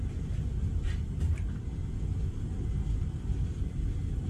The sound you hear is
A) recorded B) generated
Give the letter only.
A